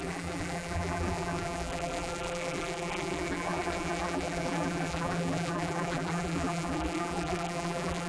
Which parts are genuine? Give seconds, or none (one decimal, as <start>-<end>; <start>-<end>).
none